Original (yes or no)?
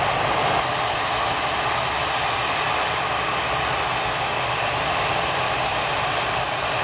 yes